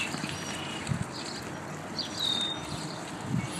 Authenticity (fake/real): real